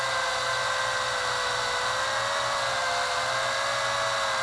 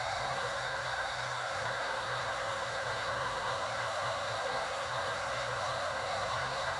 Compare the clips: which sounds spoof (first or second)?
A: second